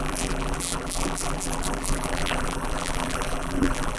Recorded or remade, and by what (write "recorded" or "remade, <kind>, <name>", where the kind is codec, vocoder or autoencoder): remade, vocoder, BigVGAN v2